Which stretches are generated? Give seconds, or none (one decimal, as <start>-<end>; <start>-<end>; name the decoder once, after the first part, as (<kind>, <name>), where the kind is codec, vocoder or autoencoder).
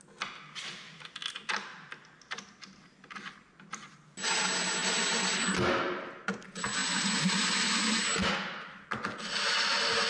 none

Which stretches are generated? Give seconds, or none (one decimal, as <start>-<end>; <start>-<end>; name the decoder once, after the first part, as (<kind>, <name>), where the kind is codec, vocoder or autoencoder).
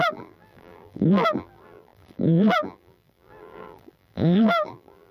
0.0-5.1 (vocoder, BigVGAN v2)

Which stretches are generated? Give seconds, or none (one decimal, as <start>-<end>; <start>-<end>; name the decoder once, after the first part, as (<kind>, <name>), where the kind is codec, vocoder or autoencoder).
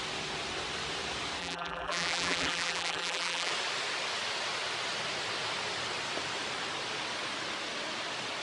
1.4-3.5 (vocoder, BigVGAN v2)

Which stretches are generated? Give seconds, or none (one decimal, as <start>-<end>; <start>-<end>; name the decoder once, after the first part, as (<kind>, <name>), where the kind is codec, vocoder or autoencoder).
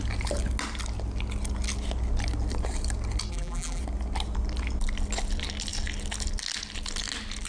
3.3-3.8 (vocoder, BigVGAN v2)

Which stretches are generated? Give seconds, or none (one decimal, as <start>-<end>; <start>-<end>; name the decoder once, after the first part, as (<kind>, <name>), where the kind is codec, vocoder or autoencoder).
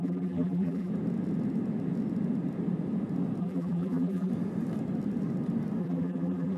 0.0-0.9 (vocoder, BigVGAN v2); 3.4-4.3; 5.8-6.6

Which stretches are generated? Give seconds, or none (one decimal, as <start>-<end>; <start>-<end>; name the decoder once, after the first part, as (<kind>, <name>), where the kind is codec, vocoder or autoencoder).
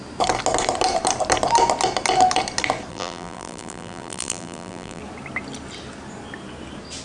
2.9-5.0 (vocoder, BigVGAN v2)